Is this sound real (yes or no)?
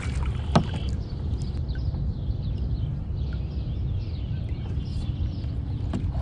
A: yes